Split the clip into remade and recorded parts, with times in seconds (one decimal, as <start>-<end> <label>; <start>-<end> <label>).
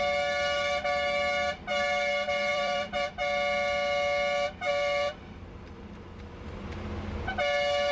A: 0.0-2.5 recorded; 2.5-3.1 remade; 3.1-4.7 recorded; 4.7-6.7 remade; 6.7-7.9 recorded